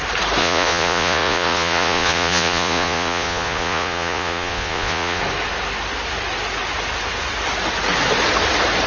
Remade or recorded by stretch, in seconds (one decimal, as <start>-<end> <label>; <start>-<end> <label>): 0.0-0.4 recorded; 0.4-5.2 remade; 5.2-8.9 recorded